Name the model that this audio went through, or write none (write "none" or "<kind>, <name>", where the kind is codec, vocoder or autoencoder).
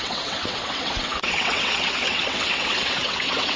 vocoder, WaveNeXt